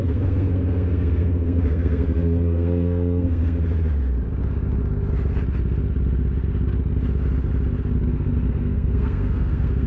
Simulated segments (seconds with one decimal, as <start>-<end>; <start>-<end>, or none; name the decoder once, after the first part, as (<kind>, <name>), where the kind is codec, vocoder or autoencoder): 0.0-3.6 (codec, SNAC); 8.5-9.9